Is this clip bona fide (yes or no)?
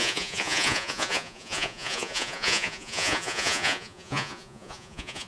no